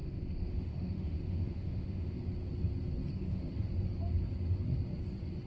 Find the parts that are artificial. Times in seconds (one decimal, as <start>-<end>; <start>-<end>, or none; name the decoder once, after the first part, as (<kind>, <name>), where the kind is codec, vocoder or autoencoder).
0.0-2.2 (autoencoder, DAC-VAE); 3.1-3.7